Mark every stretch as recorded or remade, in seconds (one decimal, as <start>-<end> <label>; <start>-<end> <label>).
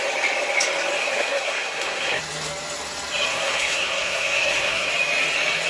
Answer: 0.0-1.0 recorded; 1.0-2.2 remade; 2.2-3.3 recorded; 3.3-4.9 remade; 4.9-5.7 recorded